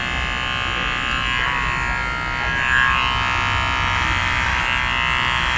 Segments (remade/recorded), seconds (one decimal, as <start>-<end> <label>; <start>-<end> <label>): 0.0-5.6 recorded